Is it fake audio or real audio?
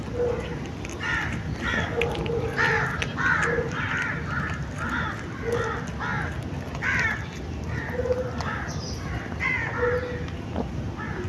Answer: real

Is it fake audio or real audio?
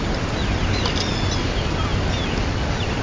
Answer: real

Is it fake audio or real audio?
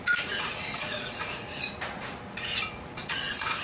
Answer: fake